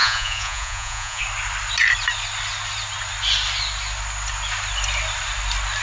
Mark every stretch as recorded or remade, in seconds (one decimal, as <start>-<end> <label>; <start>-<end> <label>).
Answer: 0.0-1.2 remade; 1.2-5.8 recorded